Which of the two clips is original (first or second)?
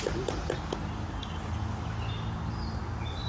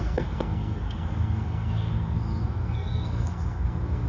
first